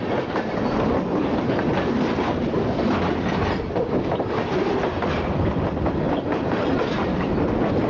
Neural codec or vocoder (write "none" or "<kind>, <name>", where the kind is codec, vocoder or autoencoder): vocoder, BigVGAN v2